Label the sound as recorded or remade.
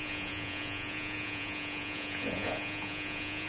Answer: remade